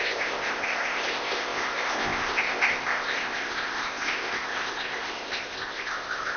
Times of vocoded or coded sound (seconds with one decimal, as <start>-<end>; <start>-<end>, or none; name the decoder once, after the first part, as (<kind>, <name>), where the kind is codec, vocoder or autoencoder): 0.0-6.4 (codec, ZipCodec)